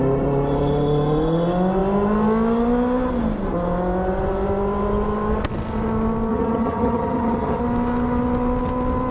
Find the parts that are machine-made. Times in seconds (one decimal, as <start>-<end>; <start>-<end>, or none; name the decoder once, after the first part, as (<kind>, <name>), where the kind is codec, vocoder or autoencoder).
6.3-7.6 (vocoder, HiFi-GAN)